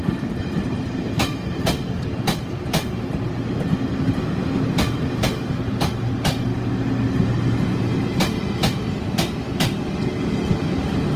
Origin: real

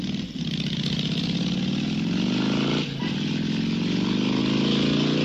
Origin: real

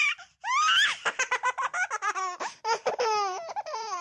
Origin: fake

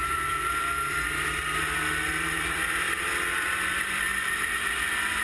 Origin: fake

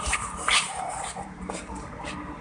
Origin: fake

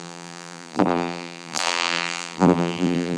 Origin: fake